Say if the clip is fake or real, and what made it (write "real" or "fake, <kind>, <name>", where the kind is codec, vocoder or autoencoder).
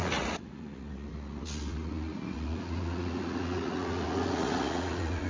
fake, vocoder, Vocos